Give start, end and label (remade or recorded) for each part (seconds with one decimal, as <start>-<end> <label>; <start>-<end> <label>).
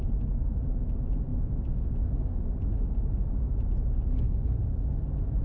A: 0.0-5.4 recorded